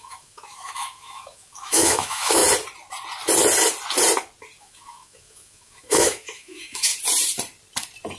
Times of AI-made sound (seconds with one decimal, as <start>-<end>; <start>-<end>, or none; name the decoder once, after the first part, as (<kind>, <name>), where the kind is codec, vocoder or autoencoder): 0.0-2.4 (autoencoder, DAC-VAE); 4.6-6.9